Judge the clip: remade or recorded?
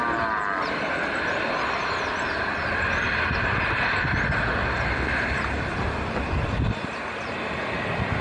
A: recorded